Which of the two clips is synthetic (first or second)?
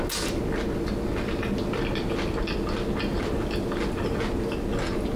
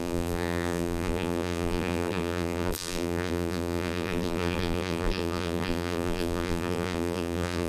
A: second